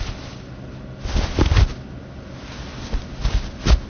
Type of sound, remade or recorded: recorded